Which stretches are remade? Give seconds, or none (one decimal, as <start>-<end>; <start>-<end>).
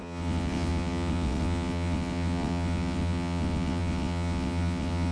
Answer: 0.0-5.1